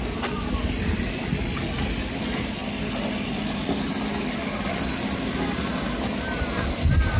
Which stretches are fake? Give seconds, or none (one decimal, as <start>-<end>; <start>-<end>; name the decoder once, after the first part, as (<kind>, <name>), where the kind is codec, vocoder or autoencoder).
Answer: none